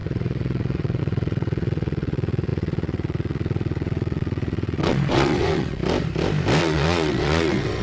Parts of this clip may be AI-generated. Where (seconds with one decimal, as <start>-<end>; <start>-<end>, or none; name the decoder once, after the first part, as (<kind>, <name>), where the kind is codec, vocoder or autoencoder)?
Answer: 0.0-5.8 (vocoder, WaveNeXt); 6.6-7.8